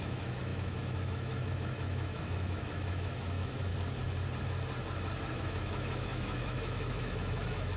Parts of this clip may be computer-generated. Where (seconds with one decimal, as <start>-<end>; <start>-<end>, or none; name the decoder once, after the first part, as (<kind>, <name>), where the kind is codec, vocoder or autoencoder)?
0.0-3.7 (autoencoder, DAC-VAE); 5.4-7.8